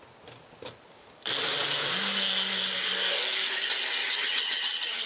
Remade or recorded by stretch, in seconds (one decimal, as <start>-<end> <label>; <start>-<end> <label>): 0.0-4.0 recorded; 4.0-5.1 remade